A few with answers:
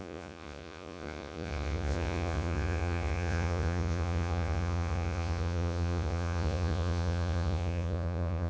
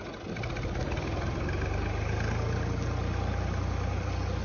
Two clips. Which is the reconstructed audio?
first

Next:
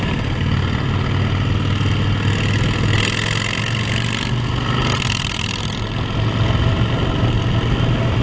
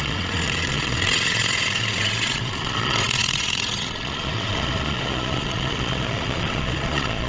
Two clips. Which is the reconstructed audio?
second